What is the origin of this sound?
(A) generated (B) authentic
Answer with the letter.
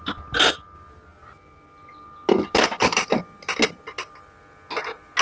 B